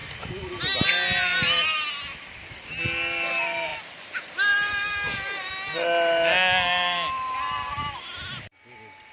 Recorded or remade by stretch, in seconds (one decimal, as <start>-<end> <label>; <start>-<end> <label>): 0.0-3.7 recorded; 3.7-5.5 remade; 5.5-9.1 recorded